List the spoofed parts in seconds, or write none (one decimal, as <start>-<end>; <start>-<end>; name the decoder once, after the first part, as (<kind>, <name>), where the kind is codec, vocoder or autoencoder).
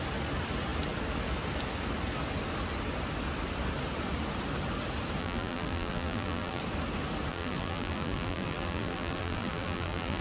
5.2-6.6 (vocoder, BigVGAN v2); 7.3-10.2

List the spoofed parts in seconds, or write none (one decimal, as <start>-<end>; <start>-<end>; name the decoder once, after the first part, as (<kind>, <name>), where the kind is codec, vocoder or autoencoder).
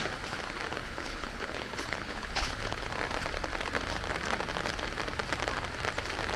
0.8-2.9 (codec, HILCodec)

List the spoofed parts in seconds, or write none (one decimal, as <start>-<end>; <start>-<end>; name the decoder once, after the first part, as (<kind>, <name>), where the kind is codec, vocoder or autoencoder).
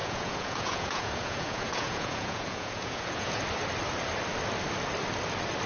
0.0-3.4 (vocoder, Vocos)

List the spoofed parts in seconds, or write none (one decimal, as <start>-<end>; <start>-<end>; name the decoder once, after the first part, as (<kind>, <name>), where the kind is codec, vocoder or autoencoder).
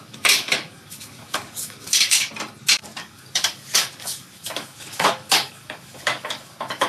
0.0-2.3 (codec, DAC); 2.8-6.9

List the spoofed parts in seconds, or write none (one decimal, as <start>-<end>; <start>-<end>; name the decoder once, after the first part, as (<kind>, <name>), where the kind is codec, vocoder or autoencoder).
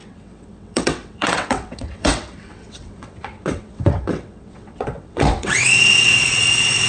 0.0-6.9 (vocoder, WaveNeXt)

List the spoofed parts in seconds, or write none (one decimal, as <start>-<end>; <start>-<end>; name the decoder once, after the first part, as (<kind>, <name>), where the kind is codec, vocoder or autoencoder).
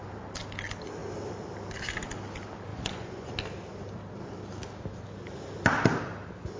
2.7-3.3 (vocoder, Vocos)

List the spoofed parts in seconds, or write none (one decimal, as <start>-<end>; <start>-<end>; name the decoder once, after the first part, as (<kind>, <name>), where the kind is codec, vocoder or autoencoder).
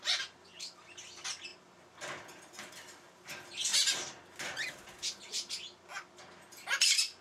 none